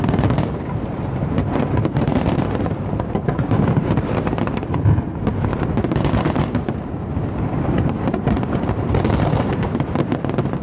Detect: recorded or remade remade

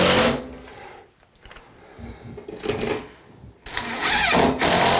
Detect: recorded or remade recorded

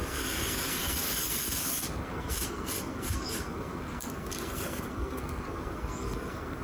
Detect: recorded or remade remade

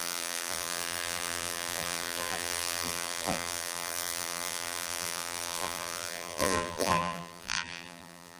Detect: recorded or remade remade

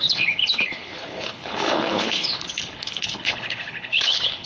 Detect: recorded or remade remade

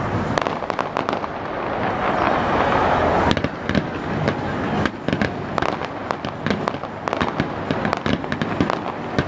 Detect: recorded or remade recorded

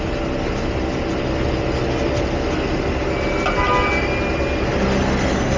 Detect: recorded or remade recorded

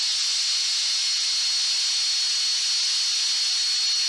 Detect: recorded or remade recorded